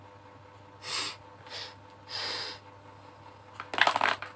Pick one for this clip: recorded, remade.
recorded